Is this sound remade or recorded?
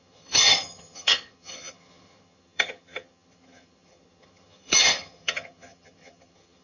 remade